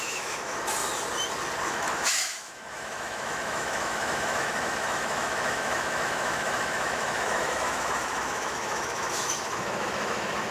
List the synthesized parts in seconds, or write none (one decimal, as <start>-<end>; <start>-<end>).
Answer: 0.0-0.8; 1.6-10.5